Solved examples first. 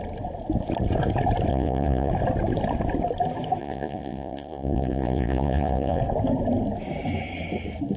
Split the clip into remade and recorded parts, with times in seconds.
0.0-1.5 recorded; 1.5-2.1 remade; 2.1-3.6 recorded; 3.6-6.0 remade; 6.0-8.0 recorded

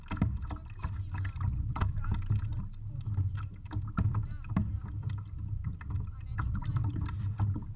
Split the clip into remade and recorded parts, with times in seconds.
0.0-7.8 recorded

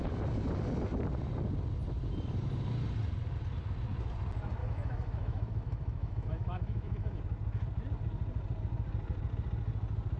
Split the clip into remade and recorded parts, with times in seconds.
0.0-4.6 recorded; 4.6-7.2 remade; 7.2-10.2 recorded